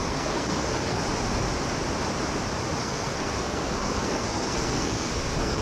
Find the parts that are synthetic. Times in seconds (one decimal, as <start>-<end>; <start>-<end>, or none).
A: 0.0-1.0; 2.8-5.6